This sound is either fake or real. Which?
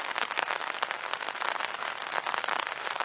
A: real